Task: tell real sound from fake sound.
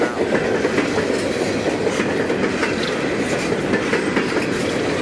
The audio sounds real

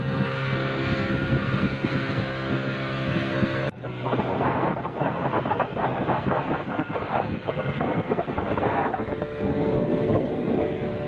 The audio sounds fake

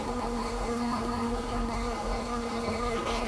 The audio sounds fake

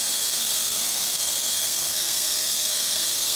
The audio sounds fake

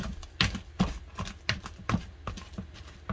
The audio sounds real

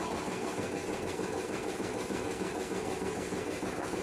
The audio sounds fake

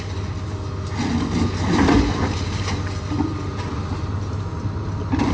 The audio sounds real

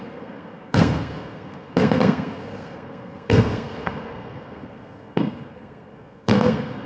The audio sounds fake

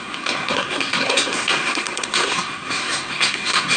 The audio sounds fake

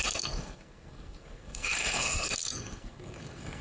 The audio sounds fake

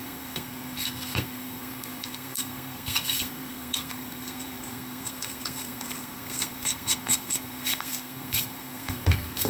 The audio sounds fake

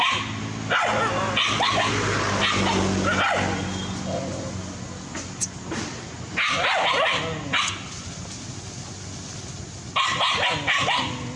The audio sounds real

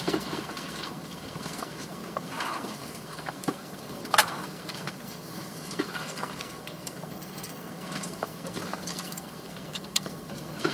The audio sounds fake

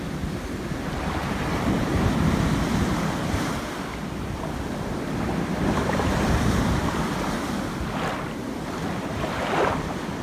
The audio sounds real